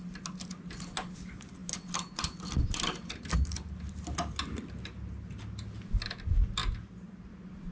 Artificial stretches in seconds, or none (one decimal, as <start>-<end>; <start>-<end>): none